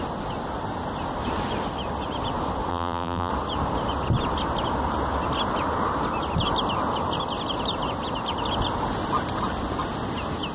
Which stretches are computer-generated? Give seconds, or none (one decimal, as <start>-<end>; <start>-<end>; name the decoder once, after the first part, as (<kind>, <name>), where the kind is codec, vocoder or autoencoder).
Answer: 2.7-3.3 (vocoder, BigVGAN v2)